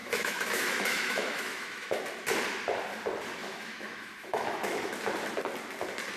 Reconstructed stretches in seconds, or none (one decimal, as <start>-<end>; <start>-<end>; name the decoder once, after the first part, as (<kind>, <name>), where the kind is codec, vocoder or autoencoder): 0.0-2.0 (autoencoder, DAC-VAE); 3.4-4.9